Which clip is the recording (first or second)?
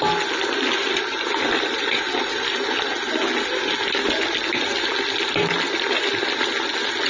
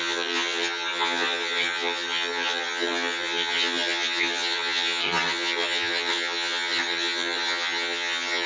first